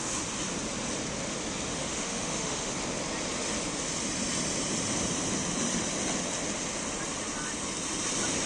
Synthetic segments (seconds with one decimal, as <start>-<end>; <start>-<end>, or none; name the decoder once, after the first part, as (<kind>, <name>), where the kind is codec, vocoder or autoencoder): 1.7-2.7 (autoencoder, DAC-VAE)